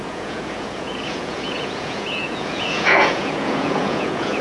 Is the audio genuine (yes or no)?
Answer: no